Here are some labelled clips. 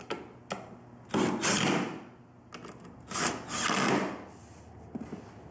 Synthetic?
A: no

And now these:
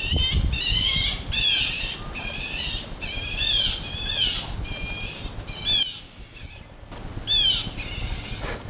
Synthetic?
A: no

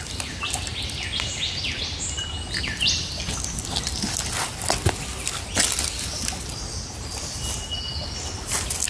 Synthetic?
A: no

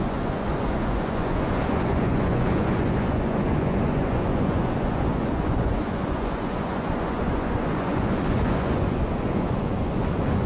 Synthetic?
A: yes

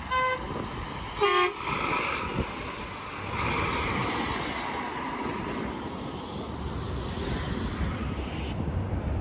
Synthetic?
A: no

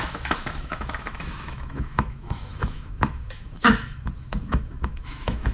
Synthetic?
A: yes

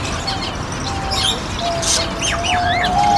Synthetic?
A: no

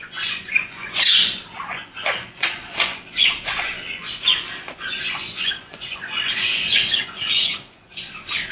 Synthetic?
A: yes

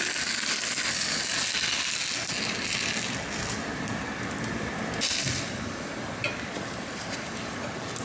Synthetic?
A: no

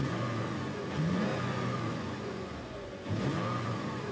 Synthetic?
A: yes